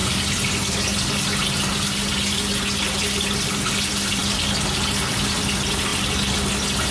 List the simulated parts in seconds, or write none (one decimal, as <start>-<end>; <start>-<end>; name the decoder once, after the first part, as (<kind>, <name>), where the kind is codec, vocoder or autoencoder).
none